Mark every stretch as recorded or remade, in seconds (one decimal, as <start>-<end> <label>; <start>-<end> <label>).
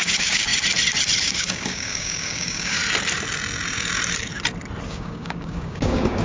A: 0.0-0.5 remade; 0.5-1.2 recorded; 1.2-2.8 remade; 2.8-4.9 recorded; 4.9-6.2 remade